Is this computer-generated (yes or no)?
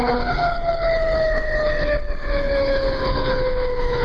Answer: yes